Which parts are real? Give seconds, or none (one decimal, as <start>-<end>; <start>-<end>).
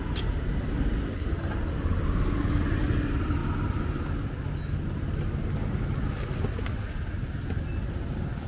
0.0-8.5